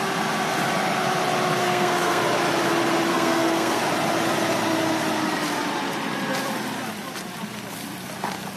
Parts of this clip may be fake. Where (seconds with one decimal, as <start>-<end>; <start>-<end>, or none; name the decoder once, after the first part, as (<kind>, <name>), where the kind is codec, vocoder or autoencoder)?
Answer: 1.6-2.2 (codec, SNAC); 3.1-3.8